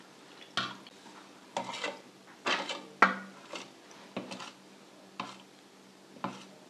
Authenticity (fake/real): real